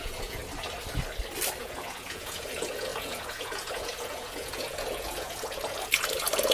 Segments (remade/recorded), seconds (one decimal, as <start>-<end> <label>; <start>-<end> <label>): 0.0-0.4 remade; 0.4-1.6 recorded; 1.6-6.5 remade